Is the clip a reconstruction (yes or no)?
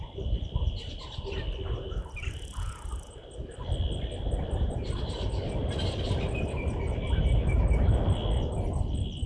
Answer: no